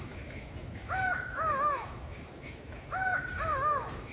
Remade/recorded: remade